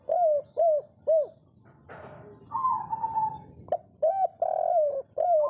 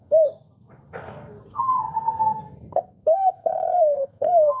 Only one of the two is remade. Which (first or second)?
second